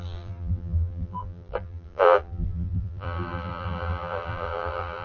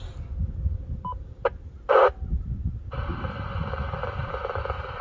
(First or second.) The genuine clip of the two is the second